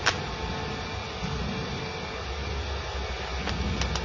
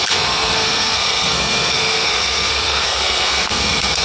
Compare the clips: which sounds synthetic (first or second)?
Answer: second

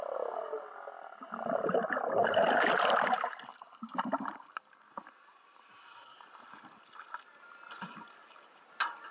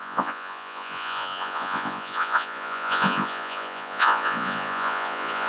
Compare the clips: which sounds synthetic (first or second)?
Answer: second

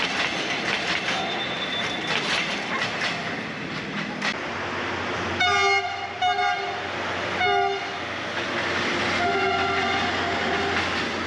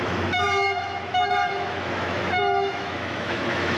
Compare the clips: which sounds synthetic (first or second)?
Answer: second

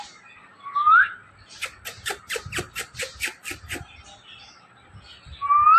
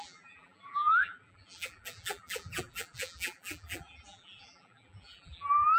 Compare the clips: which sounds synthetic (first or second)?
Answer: second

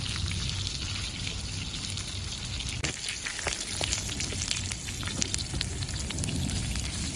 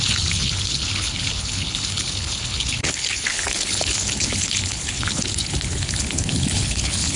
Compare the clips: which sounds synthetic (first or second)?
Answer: second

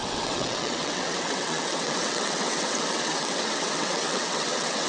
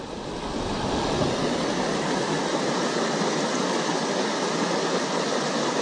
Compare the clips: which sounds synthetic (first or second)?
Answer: first